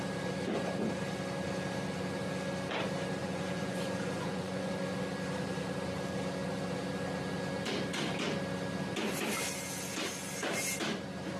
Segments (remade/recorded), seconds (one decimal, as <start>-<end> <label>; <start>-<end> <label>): 0.0-3.2 recorded; 3.2-4.7 remade; 4.7-11.4 recorded